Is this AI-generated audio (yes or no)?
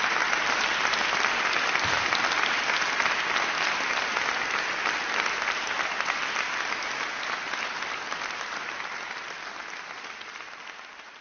no